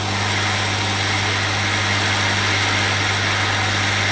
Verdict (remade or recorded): recorded